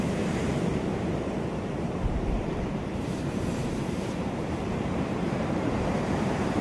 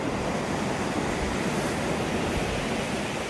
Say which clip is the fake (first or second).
first